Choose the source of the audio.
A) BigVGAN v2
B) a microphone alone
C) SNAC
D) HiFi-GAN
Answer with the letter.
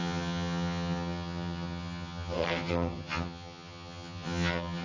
D